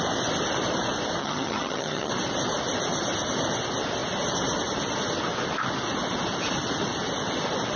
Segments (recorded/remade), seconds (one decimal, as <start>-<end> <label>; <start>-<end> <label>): 0.0-1.2 recorded; 1.2-2.1 remade; 2.1-7.8 recorded